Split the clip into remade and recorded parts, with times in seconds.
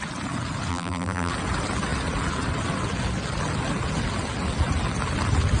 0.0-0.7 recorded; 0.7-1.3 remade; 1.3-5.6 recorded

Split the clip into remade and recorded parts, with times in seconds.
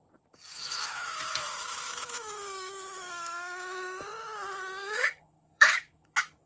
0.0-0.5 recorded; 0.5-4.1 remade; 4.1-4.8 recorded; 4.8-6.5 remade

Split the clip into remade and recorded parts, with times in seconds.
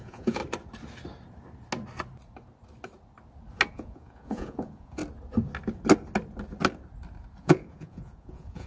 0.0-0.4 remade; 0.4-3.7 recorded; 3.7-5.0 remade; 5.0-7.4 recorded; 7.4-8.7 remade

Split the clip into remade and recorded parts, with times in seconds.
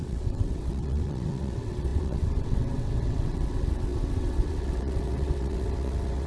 0.0-6.3 remade